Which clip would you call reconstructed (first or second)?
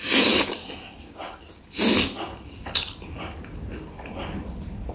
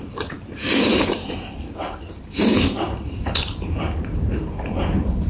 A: second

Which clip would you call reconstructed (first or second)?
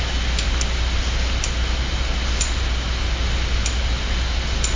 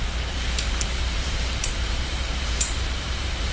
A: second